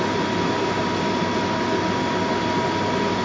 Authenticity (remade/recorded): recorded